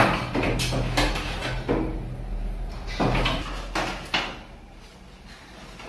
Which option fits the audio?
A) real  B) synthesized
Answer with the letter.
A